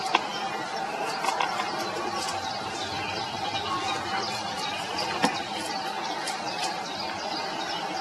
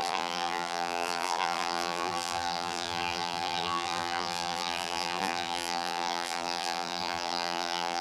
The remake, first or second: second